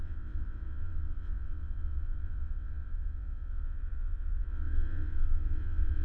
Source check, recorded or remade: remade